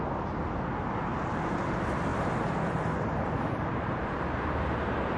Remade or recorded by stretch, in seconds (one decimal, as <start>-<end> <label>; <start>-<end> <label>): 0.0-2.1 recorded; 2.1-5.2 remade